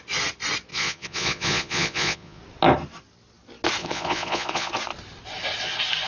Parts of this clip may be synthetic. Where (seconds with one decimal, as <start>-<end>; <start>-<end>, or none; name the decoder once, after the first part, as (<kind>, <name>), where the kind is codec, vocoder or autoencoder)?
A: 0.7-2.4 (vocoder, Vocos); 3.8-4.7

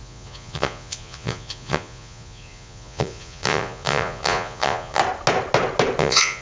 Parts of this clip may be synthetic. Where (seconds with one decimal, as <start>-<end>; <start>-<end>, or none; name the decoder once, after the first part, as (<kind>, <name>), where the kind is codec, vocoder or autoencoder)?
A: 0.0-5.0 (vocoder, Vocos); 6.0-6.4

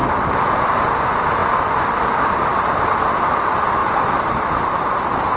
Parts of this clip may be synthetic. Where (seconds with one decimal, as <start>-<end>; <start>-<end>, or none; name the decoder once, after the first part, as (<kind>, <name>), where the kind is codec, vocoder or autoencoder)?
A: none

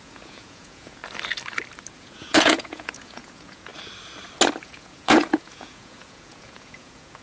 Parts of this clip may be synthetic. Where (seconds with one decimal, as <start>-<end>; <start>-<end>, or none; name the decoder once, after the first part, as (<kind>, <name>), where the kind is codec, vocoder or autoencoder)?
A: 0.0-1.0 (vocoder, Vocos); 1.9-3.7; 4.6-7.2

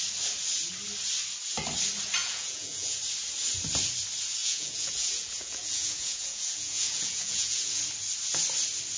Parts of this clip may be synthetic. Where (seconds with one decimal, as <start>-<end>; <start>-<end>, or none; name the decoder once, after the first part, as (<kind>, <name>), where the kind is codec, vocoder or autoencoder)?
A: 2.2-3.0 (vocoder, Vocos); 4.4-7.8